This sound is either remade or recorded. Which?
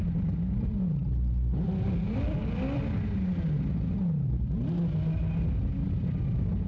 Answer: recorded